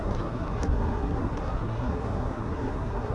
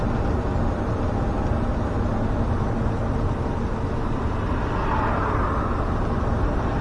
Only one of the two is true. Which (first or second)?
second